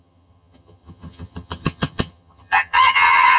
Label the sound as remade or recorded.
remade